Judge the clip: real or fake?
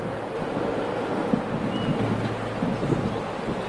real